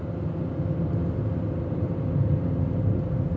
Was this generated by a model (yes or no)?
no